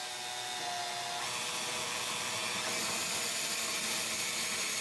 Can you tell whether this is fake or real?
real